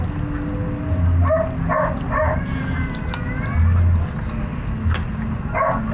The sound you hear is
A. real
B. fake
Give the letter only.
A